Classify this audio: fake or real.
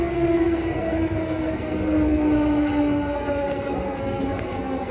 fake